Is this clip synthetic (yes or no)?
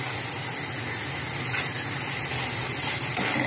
no